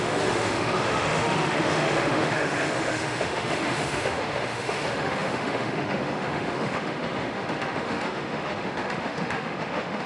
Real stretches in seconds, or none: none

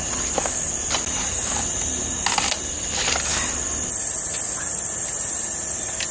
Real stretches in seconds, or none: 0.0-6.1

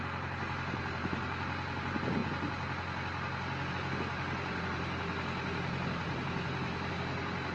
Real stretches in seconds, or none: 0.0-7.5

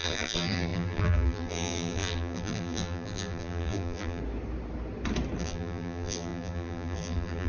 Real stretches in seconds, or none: 4.2-5.4

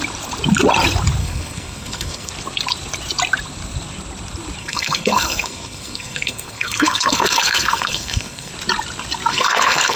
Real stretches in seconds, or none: 0.0-1.2; 2.3-4.6; 8.5-9.3